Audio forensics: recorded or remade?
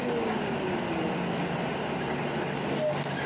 recorded